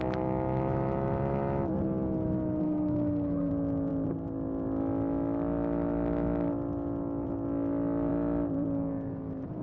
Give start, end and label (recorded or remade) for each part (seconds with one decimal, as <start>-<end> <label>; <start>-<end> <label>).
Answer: 0.0-2.6 recorded; 2.6-3.5 remade; 3.5-9.6 recorded